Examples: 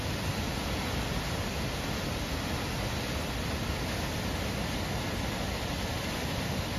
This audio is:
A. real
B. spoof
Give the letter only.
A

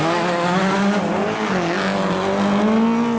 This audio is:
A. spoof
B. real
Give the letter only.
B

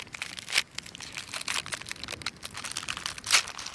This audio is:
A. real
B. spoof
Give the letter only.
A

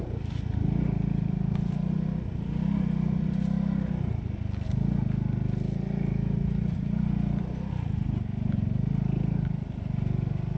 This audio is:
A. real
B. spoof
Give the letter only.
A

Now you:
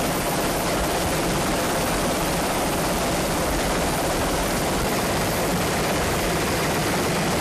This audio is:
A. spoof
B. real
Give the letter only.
B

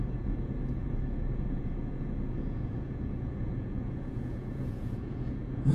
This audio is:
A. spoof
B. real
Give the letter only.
A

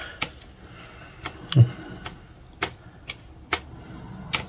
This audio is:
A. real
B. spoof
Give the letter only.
A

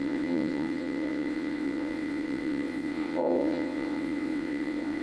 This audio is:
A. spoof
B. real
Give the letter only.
A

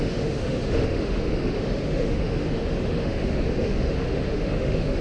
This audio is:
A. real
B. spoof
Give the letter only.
B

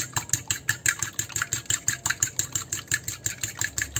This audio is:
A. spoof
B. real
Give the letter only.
B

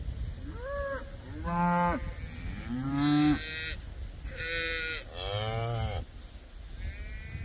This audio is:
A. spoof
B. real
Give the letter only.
B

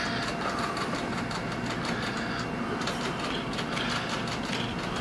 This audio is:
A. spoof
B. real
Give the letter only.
B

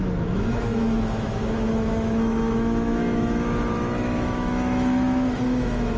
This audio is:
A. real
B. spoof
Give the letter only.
B